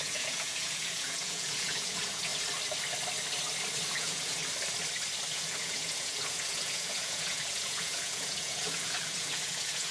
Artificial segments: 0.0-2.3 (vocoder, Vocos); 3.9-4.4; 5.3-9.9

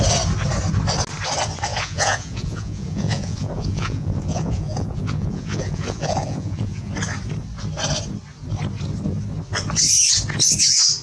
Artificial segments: 1.7-6.9 (vocoder, Vocos)

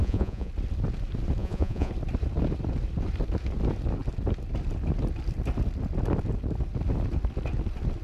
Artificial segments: 0.0-0.5 (vocoder, Vocos); 1.4-1.9